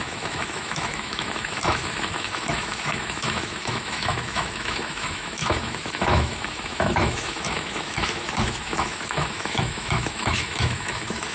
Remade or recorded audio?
remade